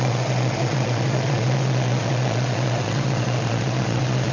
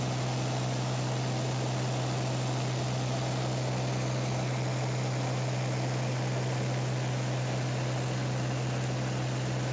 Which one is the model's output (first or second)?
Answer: first